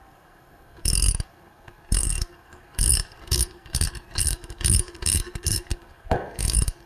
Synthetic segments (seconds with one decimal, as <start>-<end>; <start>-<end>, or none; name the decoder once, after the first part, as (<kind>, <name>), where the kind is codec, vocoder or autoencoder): 0.0-6.9 (codec, SNAC)